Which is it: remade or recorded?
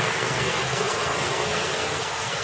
remade